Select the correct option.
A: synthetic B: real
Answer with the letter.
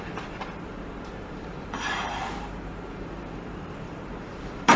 A